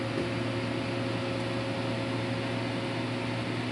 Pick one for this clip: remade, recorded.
recorded